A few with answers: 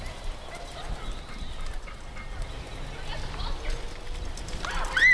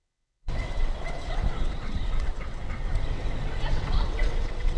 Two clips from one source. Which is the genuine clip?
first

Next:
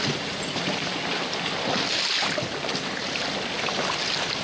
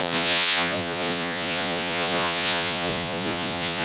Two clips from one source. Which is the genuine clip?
first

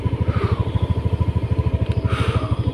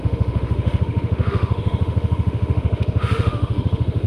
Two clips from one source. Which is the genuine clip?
first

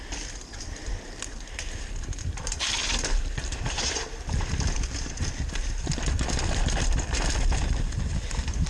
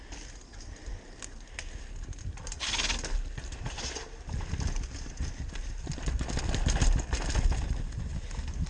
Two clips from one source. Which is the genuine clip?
second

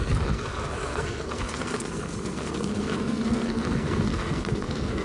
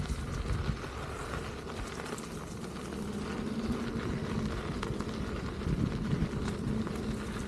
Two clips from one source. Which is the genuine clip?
second